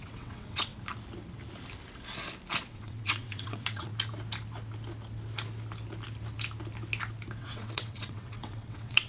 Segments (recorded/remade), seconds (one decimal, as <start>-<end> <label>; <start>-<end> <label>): 0.0-0.7 remade; 0.7-2.6 recorded; 2.6-3.9 remade; 3.9-7.4 recorded; 7.4-9.1 remade